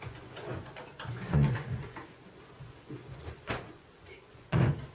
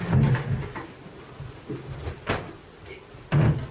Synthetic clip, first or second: first